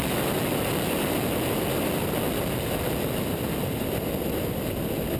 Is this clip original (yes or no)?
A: yes